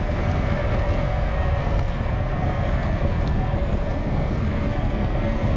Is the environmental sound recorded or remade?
remade